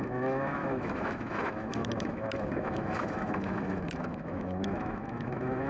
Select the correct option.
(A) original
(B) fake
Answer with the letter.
B